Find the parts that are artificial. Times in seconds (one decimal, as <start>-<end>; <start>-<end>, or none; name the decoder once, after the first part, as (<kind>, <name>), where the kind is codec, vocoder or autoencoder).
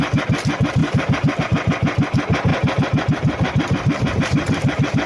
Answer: 0.8-1.4 (vocoder, BigVGAN v2); 2.5-5.1